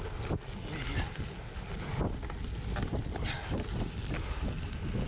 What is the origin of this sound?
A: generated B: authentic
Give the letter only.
B